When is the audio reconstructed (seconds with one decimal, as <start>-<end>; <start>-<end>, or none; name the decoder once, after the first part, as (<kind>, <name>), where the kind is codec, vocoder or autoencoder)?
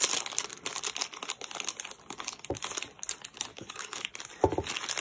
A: 3.5-4.1 (codec, DAC)